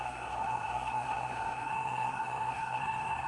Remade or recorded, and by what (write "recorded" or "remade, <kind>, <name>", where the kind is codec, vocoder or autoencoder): remade, codec, SNAC